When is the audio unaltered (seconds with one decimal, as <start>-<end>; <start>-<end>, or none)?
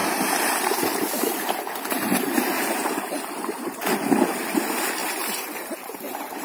none